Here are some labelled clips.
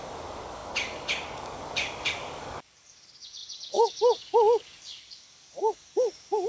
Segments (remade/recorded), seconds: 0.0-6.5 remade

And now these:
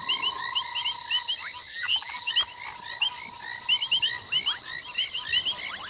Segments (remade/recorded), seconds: 0.0-1.7 recorded; 1.7-2.3 remade; 2.3-5.9 recorded

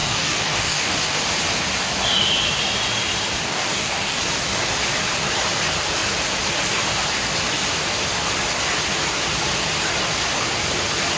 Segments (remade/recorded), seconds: 0.0-1.2 remade; 1.2-3.4 recorded; 3.4-4.2 remade; 4.2-11.2 recorded